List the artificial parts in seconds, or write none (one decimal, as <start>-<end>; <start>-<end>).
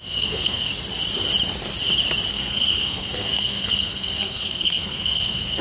0.0-0.7; 2.3-5.6